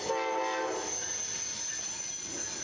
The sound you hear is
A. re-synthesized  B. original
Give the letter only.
B